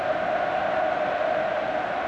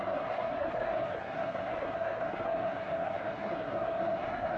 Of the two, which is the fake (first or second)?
second